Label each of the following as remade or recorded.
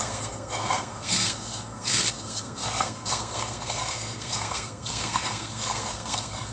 remade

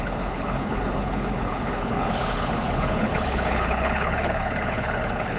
remade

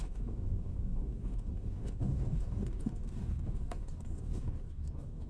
remade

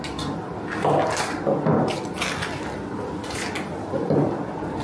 remade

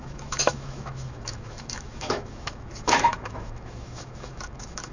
remade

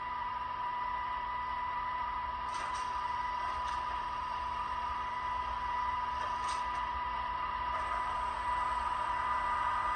remade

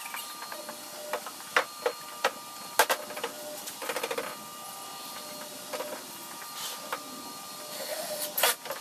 recorded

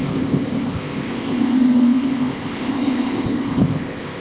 remade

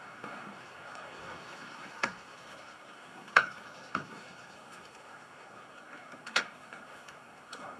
remade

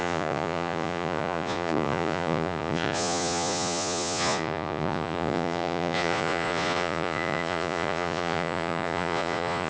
remade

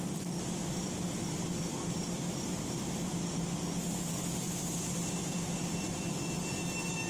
recorded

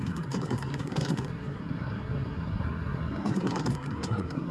remade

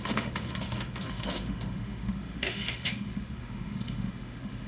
remade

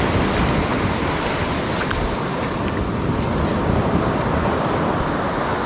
recorded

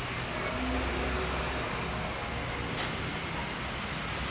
recorded